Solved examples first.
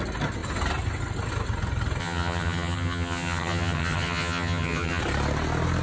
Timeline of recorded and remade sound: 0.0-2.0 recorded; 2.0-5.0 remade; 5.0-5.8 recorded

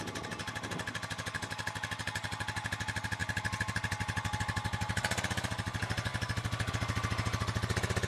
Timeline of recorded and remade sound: 0.0-8.1 recorded

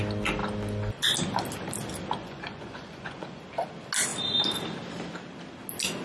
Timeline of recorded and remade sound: 0.0-2.2 recorded; 2.2-3.4 remade; 3.4-6.0 recorded